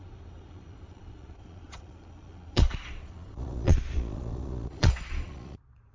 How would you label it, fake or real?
fake